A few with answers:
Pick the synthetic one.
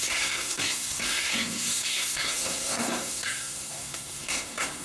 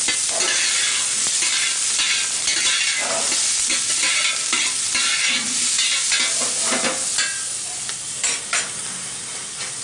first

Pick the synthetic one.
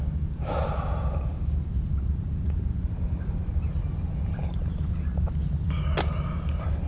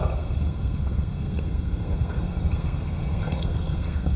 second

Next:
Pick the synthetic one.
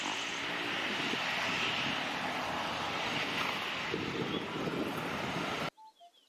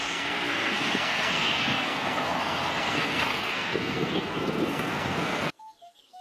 second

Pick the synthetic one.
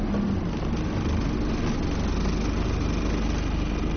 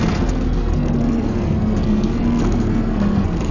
second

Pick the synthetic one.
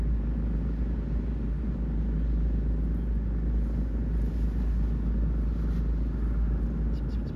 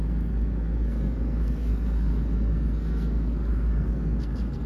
second